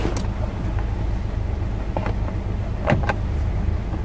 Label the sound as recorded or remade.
recorded